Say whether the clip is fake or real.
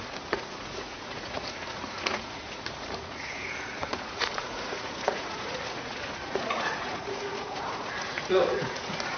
fake